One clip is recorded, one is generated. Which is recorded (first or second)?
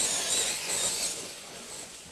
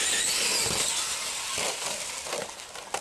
second